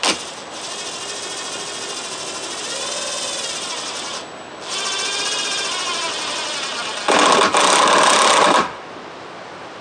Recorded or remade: recorded